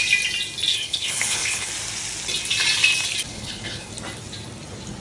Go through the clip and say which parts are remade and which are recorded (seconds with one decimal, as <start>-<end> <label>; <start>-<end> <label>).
0.0-0.7 recorded; 0.7-1.7 remade; 1.7-3.3 recorded; 3.3-3.9 remade; 3.9-5.0 recorded